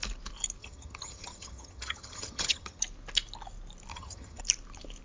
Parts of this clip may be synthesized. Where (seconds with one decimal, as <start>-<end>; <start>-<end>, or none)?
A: 0.6-2.8; 3.9-4.4